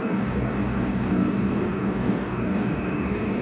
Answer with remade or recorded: remade